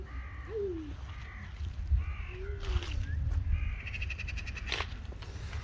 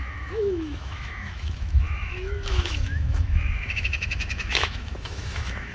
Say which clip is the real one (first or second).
first